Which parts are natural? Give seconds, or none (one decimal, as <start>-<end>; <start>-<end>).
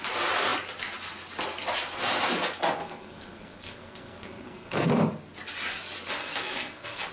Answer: 0.0-2.8; 4.9-6.2